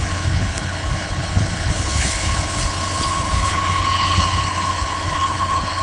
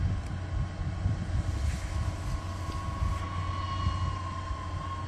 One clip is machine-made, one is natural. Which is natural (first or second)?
second